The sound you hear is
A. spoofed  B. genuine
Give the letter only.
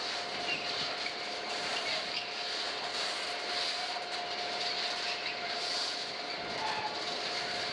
B